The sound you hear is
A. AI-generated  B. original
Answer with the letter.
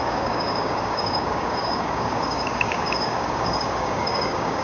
A